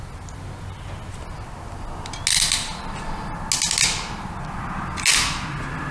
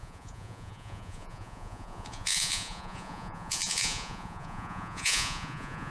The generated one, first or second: second